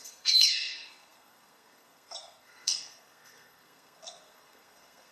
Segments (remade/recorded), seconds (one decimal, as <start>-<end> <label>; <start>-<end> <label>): 0.0-5.1 remade